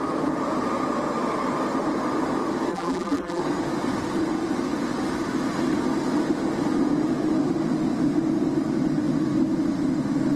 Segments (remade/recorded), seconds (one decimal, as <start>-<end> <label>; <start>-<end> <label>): 0.0-2.7 recorded; 2.7-3.4 remade; 3.4-10.4 recorded